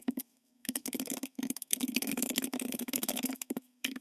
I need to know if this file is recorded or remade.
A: remade